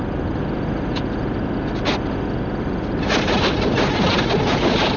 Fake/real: real